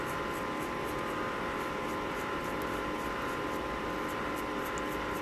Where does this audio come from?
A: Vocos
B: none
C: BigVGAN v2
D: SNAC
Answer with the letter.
B